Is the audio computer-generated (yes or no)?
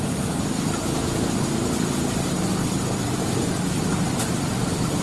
no